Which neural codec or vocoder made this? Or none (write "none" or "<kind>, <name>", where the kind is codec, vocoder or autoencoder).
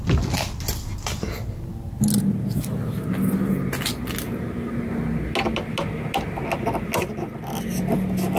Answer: none